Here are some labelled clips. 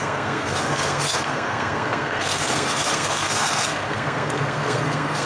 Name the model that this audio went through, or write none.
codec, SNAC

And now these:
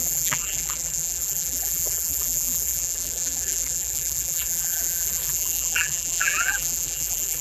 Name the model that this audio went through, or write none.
vocoder, BigVGAN v2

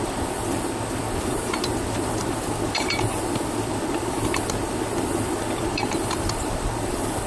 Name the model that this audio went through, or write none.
vocoder, BigVGAN v2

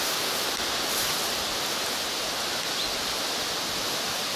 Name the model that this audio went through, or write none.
none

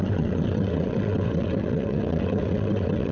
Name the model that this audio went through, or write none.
vocoder, WaveNeXt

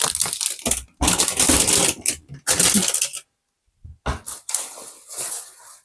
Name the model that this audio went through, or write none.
none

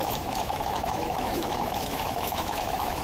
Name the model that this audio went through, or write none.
autoencoder, DAC-VAE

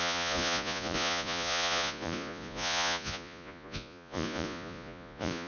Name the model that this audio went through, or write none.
vocoder, Vocos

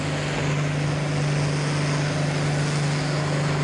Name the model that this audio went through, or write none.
none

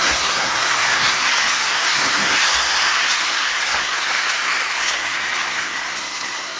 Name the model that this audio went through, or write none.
codec, SNAC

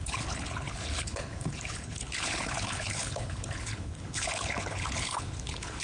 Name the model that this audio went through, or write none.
codec, HILCodec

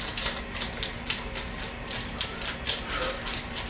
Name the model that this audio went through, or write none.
none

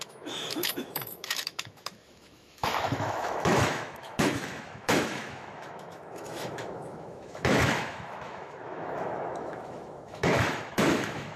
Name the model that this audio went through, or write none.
autoencoder, DAC-VAE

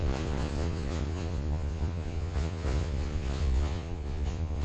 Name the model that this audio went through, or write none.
vocoder, Vocos